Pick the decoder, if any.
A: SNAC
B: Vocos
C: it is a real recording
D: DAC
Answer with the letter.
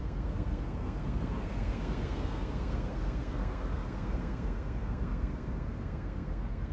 A